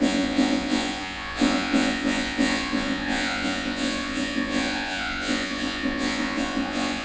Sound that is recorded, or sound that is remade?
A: remade